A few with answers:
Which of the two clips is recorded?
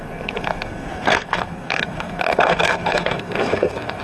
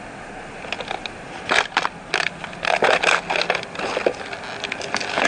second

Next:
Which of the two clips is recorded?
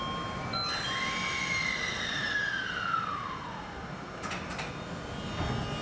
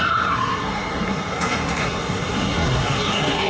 first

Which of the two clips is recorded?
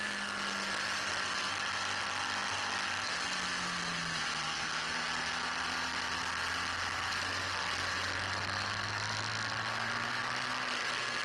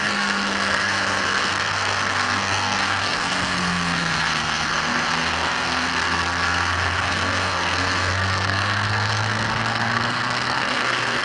first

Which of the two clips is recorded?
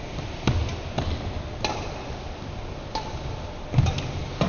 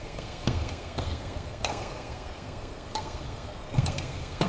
first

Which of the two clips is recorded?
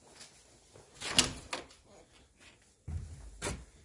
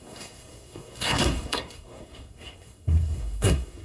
first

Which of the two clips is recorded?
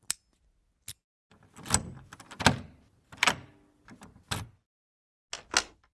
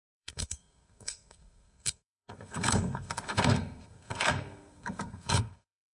first